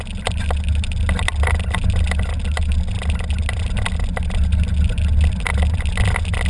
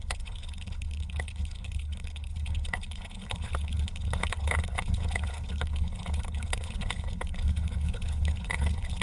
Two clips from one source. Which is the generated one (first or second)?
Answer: second